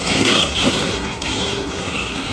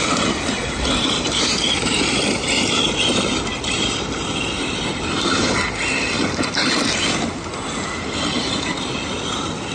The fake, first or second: first